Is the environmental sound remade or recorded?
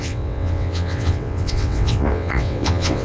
remade